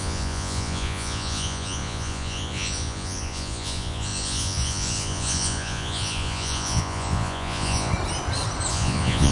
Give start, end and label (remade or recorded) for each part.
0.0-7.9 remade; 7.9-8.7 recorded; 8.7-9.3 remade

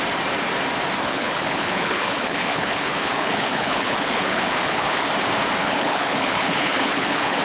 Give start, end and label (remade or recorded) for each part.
0.0-1.0 recorded; 1.0-5.1 remade; 5.1-5.6 recorded; 5.6-7.4 remade

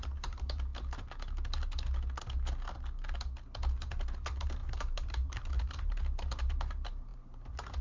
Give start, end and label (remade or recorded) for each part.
0.0-0.7 remade; 0.7-3.9 recorded; 3.9-7.8 remade

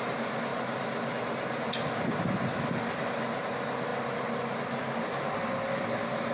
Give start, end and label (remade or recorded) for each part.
0.0-6.3 recorded

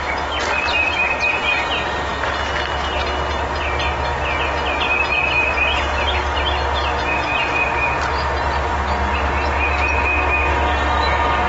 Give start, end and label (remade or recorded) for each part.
0.0-2.1 recorded; 2.1-3.6 remade; 3.6-11.5 recorded

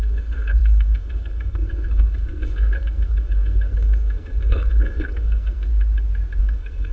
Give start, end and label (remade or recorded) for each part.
0.0-5.7 remade; 5.7-6.4 recorded; 6.4-6.9 remade